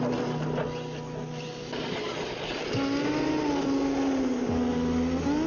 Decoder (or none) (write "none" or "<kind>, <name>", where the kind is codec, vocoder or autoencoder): none